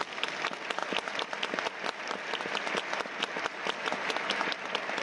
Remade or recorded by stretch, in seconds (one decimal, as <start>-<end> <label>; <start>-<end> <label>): 0.0-5.0 recorded